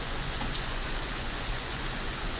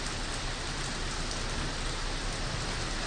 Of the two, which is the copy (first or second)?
first